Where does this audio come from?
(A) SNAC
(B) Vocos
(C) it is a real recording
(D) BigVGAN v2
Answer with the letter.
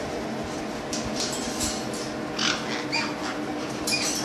C